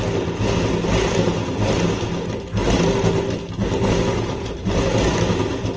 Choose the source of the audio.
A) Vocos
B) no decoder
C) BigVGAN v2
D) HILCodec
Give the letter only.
B